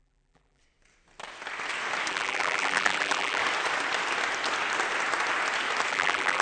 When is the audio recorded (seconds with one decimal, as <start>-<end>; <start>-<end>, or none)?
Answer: 0.6-2.1; 3.4-5.9